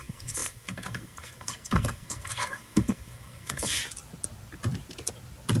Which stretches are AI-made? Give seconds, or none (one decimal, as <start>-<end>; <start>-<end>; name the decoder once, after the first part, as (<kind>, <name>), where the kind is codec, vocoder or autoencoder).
0.0-3.8 (codec, SNAC)